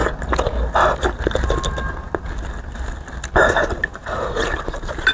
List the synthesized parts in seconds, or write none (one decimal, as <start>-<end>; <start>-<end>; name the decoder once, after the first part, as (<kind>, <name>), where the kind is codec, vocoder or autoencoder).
none